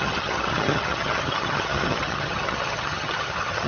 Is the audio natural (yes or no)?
no